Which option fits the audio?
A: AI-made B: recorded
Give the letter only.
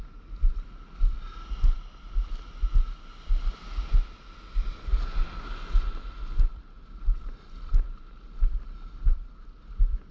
B